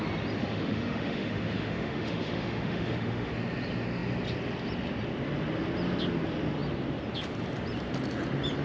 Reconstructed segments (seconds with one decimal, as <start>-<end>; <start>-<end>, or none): 0.4-3.3